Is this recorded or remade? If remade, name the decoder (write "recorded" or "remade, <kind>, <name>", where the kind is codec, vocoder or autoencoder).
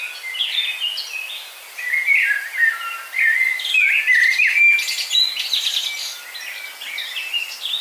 recorded